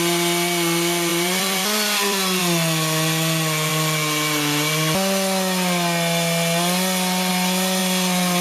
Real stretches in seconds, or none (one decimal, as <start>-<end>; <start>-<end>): 0.0-1.1; 2.4-7.8